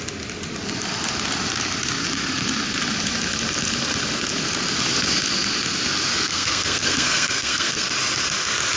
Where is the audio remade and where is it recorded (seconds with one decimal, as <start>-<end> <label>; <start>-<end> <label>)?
0.0-6.1 recorded; 6.1-7.9 remade; 7.9-8.8 recorded